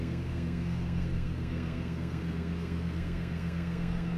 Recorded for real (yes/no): no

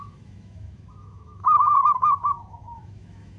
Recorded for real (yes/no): no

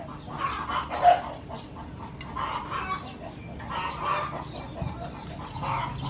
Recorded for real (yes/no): yes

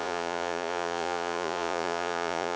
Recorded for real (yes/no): no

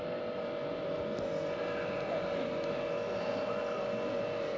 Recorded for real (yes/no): yes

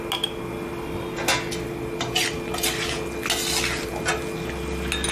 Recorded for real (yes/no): yes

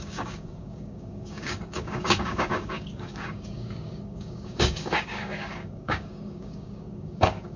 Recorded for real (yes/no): no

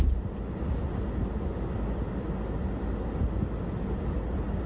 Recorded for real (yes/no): yes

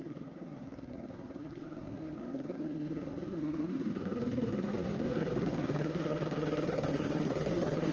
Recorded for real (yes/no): no